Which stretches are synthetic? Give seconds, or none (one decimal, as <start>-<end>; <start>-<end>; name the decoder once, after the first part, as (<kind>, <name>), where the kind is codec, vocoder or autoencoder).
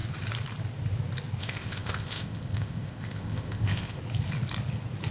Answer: 1.4-4.0 (codec, ZipCodec)